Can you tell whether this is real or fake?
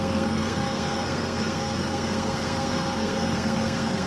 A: fake